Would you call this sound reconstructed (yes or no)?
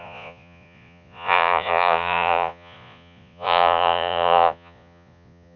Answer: yes